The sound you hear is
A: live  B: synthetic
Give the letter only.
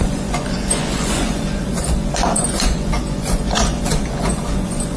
B